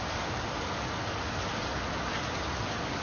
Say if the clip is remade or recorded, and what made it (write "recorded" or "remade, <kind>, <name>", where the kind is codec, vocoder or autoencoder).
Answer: recorded